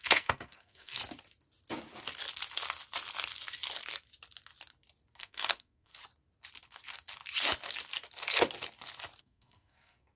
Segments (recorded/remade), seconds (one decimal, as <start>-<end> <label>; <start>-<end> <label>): 0.0-1.0 remade; 1.0-5.2 recorded; 5.2-5.9 remade; 5.9-9.2 recorded; 9.2-10.2 remade